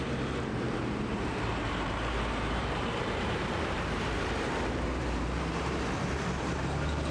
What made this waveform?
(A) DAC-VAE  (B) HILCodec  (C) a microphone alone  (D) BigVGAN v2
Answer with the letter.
D